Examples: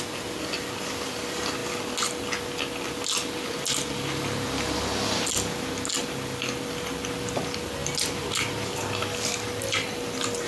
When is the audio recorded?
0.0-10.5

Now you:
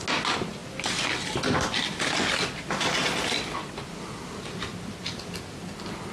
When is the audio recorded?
0.0-6.1

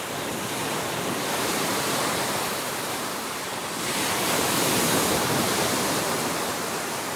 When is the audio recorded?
0.0-1.7; 6.0-7.2

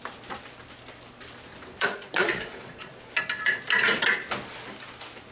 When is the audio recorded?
0.0-1.5; 3.0-5.3

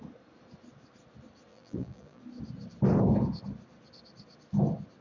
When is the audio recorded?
0.0-1.5; 2.2-5.0